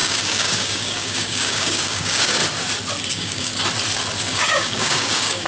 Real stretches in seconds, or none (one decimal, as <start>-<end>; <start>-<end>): 2.4-3.1; 3.5-4.2